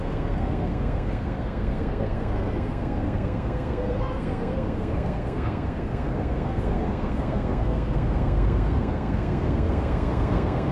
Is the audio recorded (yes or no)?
no